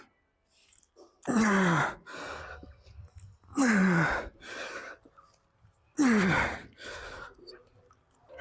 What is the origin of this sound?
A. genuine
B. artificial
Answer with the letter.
A